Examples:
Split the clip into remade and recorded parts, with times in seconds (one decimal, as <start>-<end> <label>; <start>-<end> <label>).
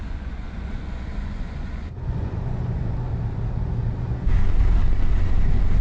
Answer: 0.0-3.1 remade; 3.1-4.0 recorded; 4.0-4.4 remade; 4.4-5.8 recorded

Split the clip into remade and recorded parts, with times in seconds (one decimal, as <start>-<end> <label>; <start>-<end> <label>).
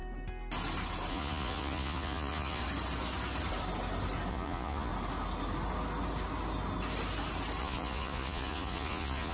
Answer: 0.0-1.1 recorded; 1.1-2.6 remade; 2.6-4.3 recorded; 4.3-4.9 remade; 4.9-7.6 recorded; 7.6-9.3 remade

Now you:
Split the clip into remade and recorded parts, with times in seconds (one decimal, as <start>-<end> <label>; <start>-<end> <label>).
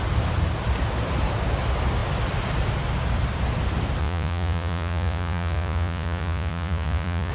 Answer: 0.0-4.0 recorded; 4.0-7.3 remade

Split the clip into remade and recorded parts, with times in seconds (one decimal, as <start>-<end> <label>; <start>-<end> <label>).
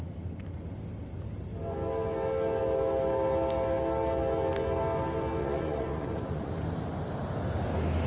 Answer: 0.0-5.4 recorded; 5.4-6.5 remade; 6.5-8.1 recorded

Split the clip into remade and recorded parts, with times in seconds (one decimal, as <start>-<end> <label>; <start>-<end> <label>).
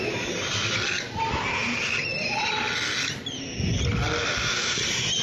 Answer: 0.0-5.2 recorded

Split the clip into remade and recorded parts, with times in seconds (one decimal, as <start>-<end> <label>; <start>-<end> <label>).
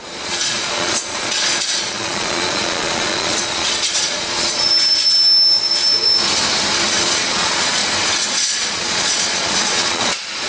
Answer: 0.0-4.7 remade; 4.7-7.0 recorded; 7.0-7.8 remade; 7.8-8.3 recorded; 8.3-10.5 remade